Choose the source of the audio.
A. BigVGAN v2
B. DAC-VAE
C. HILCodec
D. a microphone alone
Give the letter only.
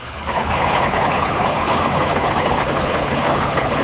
C